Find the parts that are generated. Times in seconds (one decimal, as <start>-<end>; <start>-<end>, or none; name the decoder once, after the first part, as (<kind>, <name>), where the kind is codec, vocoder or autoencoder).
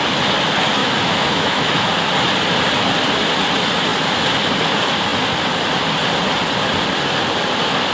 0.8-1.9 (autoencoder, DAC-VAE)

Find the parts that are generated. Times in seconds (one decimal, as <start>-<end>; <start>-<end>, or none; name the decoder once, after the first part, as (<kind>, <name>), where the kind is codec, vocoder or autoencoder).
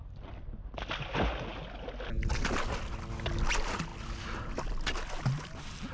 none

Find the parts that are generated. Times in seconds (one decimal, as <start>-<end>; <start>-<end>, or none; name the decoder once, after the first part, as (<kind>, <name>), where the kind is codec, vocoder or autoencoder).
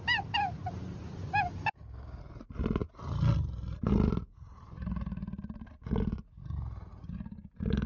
1.6-2.2 (codec, DAC)